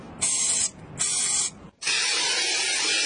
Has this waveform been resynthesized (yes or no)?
no